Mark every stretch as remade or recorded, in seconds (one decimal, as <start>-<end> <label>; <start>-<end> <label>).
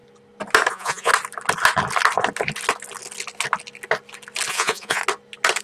0.0-0.7 recorded; 0.7-1.1 remade; 1.1-4.5 recorded; 4.5-5.0 remade; 5.0-5.6 recorded